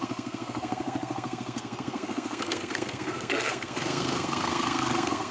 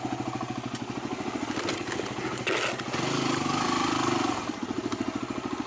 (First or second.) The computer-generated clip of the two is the first